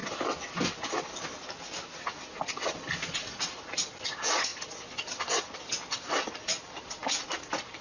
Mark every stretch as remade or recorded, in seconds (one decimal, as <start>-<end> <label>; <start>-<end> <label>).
0.0-7.8 recorded

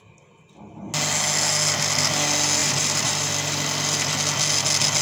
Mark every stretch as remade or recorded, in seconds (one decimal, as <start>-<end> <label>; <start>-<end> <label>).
0.0-2.6 recorded; 2.6-3.3 remade; 3.3-5.0 recorded

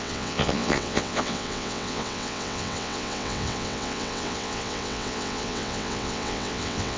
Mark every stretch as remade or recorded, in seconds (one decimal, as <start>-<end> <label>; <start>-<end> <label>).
0.0-7.0 remade

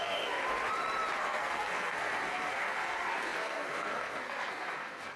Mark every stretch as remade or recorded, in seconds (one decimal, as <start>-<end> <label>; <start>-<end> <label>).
0.0-0.4 remade; 0.4-1.2 recorded; 1.2-5.2 remade

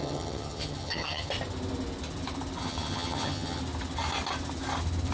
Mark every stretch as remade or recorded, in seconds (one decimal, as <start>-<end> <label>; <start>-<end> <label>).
0.0-1.3 remade; 1.3-2.6 recorded; 2.6-3.6 remade; 3.6-5.1 recorded

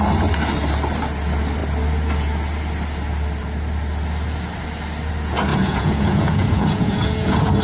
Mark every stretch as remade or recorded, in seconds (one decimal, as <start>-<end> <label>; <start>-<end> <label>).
0.0-5.5 recorded; 5.5-7.6 remade

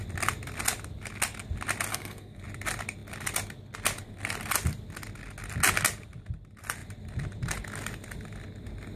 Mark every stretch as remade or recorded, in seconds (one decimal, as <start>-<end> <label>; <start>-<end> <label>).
0.0-1.9 recorded; 1.9-2.4 remade; 2.4-9.0 recorded